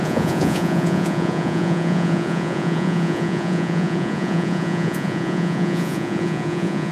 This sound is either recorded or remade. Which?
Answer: remade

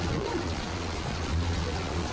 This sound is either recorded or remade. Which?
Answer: remade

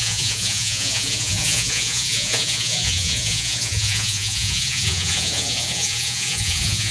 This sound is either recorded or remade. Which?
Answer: remade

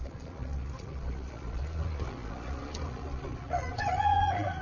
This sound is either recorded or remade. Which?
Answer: remade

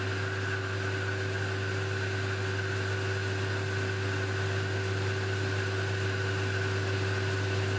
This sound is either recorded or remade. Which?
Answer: recorded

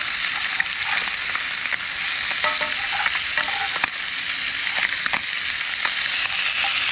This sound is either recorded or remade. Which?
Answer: recorded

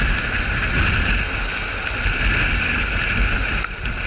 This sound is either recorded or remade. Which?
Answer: recorded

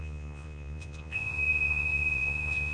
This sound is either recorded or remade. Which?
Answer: remade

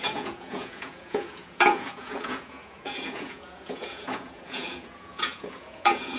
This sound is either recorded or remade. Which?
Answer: remade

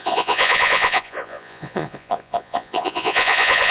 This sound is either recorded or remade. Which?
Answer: remade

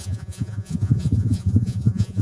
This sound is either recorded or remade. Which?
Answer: remade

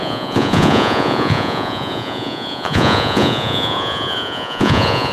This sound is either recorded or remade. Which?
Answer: remade